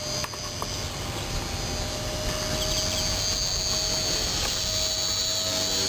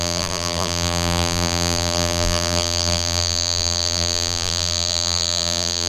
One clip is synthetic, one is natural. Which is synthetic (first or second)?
second